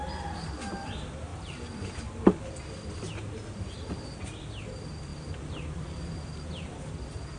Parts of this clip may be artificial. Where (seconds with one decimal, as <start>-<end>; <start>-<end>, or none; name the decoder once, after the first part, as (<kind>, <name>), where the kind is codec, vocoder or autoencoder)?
5.1-6.8 (vocoder, BigVGAN v2)